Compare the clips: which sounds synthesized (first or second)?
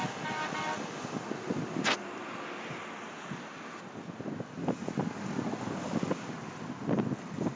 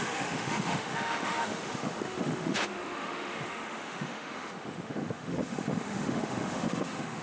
second